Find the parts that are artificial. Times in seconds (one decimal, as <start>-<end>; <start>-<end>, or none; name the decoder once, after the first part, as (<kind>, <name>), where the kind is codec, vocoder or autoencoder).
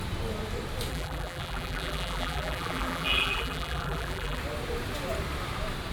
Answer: 0.9-4.4 (vocoder, BigVGAN v2)